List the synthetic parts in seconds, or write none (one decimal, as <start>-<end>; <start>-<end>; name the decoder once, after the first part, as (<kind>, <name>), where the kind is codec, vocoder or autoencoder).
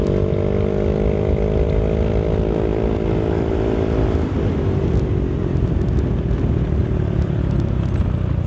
6.8-7.4 (vocoder, BigVGAN v2)